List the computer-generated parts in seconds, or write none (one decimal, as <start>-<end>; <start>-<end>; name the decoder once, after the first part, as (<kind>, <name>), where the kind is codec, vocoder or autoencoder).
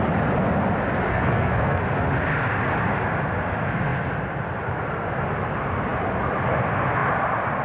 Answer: 1.1-1.8 (codec, SNAC)